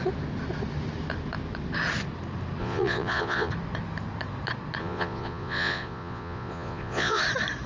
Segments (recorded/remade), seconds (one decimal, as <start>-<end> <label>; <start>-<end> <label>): 0.0-2.6 recorded; 2.6-3.5 remade; 3.5-4.8 recorded; 4.8-7.2 remade; 7.2-7.7 recorded